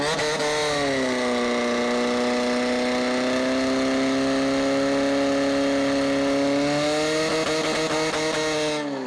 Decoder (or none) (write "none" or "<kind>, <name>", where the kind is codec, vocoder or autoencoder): none